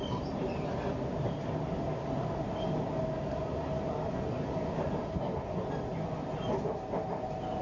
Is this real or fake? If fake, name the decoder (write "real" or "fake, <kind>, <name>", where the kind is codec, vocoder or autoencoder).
real